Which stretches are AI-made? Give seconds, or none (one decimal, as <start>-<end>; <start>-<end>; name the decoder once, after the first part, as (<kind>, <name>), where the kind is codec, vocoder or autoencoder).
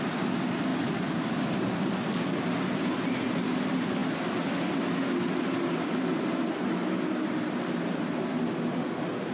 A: none